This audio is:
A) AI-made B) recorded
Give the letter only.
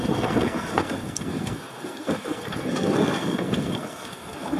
A